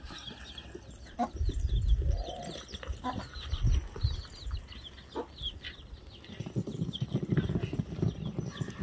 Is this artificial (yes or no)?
no